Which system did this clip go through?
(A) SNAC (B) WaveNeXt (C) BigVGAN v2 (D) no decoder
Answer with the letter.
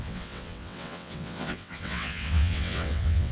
B